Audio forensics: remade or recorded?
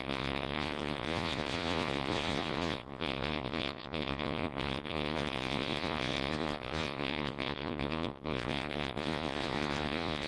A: remade